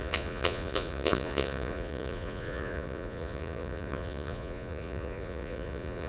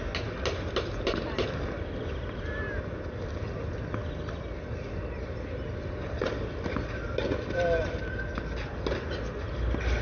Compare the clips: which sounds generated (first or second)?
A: first